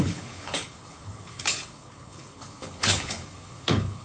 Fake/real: fake